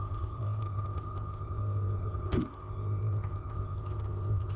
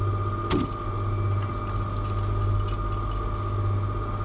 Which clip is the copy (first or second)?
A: first